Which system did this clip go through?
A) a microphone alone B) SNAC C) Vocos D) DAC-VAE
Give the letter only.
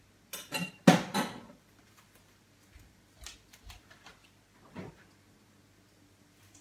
A